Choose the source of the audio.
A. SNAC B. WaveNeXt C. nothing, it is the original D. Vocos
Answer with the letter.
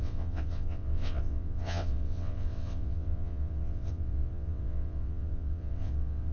B